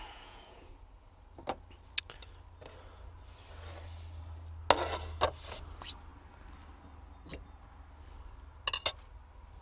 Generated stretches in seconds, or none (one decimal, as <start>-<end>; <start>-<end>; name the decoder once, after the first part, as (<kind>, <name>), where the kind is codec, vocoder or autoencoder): 0.0-0.7 (vocoder, Vocos)